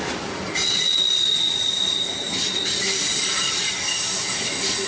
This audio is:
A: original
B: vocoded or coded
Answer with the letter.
A